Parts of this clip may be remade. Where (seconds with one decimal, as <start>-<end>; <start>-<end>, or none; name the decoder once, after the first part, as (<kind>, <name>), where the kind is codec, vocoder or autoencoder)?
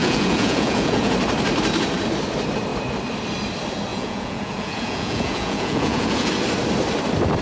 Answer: 0.0-1.1 (vocoder, Vocos); 3.9-6.3